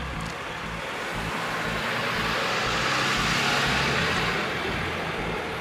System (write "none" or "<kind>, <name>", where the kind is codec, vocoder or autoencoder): none